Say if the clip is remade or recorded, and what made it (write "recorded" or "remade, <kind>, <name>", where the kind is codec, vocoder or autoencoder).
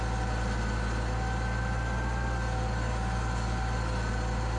recorded